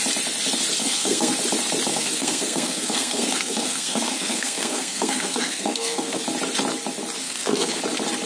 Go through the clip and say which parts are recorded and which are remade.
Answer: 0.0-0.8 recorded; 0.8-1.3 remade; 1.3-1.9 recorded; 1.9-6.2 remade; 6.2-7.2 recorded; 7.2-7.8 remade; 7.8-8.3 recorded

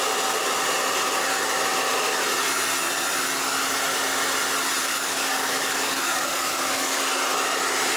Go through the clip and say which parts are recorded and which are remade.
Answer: 0.0-4.8 recorded; 4.8-7.0 remade; 7.0-8.0 recorded

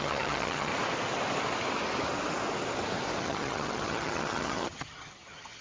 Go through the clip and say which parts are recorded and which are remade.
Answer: 0.0-0.7 remade; 0.7-3.2 recorded; 3.2-5.6 remade

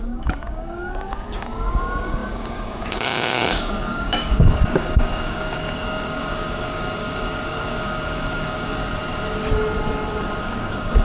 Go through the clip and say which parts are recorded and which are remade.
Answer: 0.0-8.8 remade; 8.8-10.4 recorded; 10.4-11.0 remade

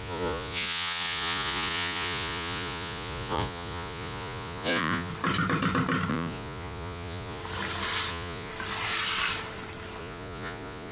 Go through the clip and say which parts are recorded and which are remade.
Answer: 0.0-5.1 remade; 5.1-6.1 recorded; 6.1-7.4 remade; 7.4-8.1 recorded; 8.1-8.5 remade; 8.5-10.0 recorded; 10.0-10.9 remade

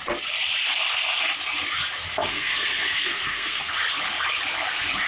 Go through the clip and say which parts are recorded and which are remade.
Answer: 0.0-2.3 recorded; 2.3-3.7 remade; 3.7-5.1 recorded

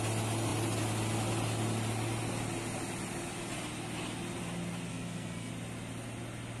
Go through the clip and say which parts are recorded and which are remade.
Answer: 0.0-4.9 recorded; 4.9-5.5 remade; 5.5-6.6 recorded